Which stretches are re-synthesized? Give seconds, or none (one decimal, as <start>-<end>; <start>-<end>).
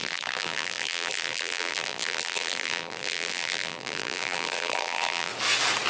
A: 0.0-5.3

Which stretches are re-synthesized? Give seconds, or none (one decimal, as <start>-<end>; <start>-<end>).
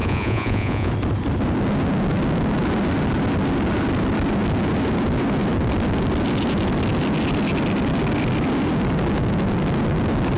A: 0.0-0.9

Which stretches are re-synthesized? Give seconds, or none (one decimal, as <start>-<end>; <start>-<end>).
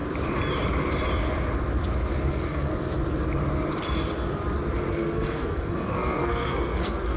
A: 2.3-2.7; 4.9-7.2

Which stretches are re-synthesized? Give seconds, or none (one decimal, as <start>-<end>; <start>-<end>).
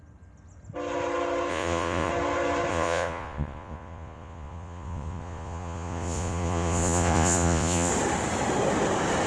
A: 1.5-2.1; 2.7-7.9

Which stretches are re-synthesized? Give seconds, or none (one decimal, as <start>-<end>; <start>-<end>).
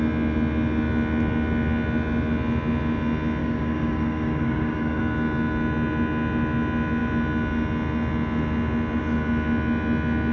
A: 3.4-5.0